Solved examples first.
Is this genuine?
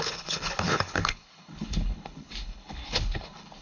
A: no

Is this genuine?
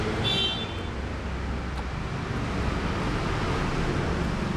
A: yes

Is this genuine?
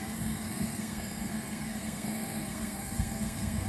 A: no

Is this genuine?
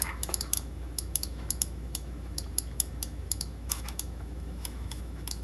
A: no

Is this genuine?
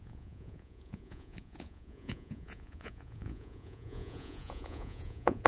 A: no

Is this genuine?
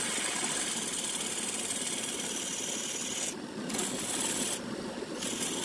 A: yes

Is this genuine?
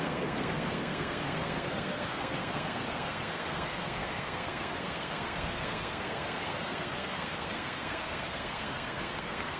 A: no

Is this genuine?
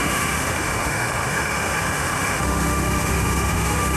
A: no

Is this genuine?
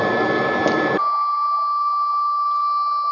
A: yes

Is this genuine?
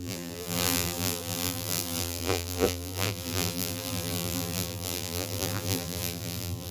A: no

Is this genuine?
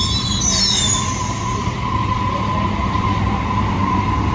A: no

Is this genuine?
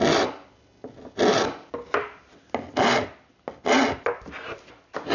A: yes